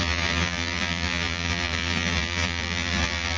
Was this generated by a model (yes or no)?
yes